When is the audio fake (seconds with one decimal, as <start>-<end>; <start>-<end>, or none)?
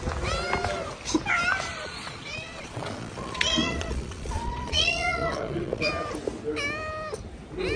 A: 1.7-5.9